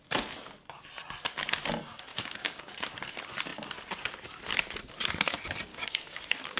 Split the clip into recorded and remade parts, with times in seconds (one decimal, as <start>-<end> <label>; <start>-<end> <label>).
0.0-2.1 recorded; 2.1-2.6 remade; 2.6-5.7 recorded; 5.7-6.6 remade